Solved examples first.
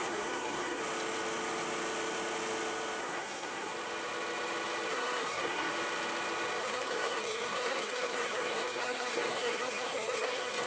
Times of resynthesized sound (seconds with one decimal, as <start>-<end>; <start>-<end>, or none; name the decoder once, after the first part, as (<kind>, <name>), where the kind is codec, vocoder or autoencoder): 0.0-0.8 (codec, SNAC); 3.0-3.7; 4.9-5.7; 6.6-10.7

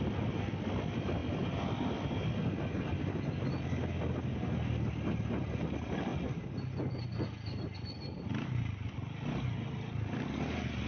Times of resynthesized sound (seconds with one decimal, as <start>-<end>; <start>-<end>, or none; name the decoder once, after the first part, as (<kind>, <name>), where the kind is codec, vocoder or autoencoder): none

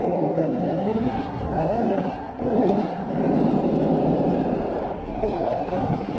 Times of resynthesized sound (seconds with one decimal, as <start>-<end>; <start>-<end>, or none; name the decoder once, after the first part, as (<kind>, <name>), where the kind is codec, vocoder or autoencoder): 0.0-3.0 (codec, SNAC); 5.0-6.2